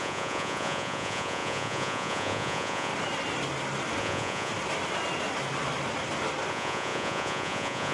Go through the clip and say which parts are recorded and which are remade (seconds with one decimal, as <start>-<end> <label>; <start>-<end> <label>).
0.0-2.9 remade; 2.9-4.0 recorded; 4.0-4.5 remade; 4.5-6.5 recorded; 6.5-7.9 remade